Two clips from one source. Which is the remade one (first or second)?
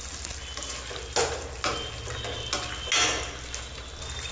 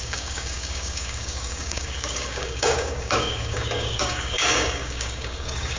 second